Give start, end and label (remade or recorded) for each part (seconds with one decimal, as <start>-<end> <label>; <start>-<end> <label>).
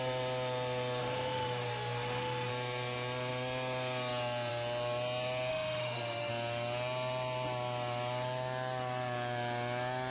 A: 0.0-1.0 recorded; 1.0-2.5 remade; 2.5-5.5 recorded; 5.5-6.3 remade; 6.3-10.1 recorded